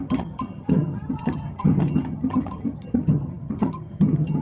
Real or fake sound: fake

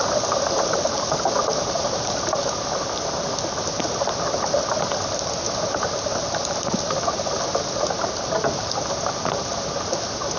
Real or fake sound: real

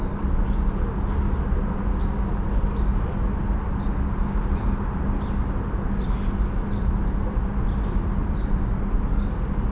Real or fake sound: real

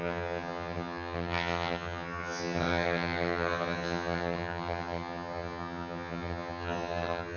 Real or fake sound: fake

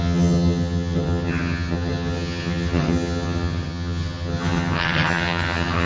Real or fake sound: fake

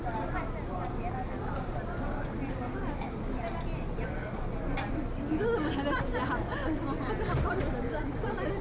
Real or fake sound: real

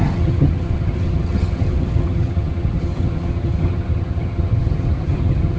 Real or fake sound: fake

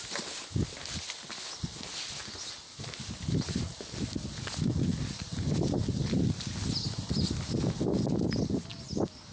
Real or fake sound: real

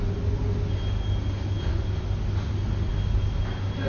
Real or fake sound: real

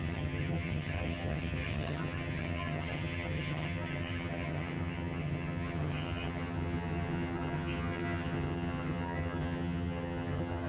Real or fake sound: fake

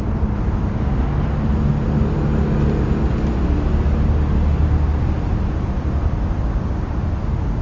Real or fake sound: real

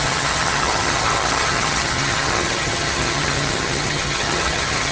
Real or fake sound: fake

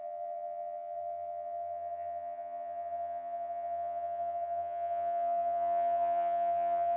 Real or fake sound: fake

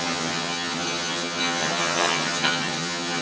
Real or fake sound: fake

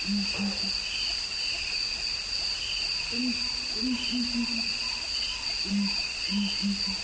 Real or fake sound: real